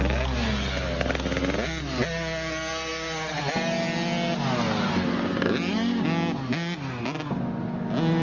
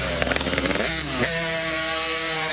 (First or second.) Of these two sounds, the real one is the first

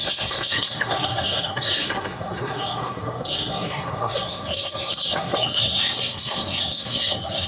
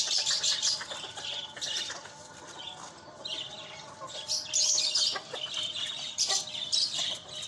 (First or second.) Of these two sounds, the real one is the second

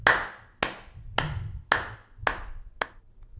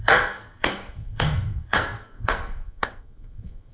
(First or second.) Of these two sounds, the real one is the first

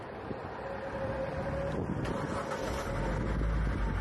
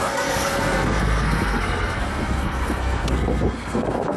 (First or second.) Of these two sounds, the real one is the first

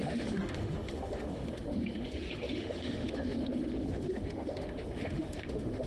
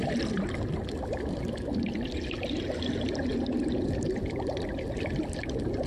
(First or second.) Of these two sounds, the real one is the second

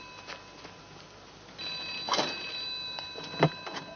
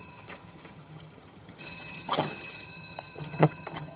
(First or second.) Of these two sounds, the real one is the first